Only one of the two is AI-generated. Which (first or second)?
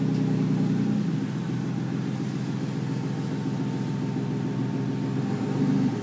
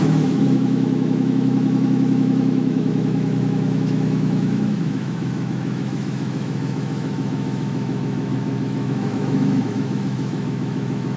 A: second